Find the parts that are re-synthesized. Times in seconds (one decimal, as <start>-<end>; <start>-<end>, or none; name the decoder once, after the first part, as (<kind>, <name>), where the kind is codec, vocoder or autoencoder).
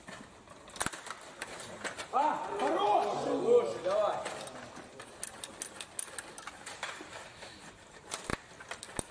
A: none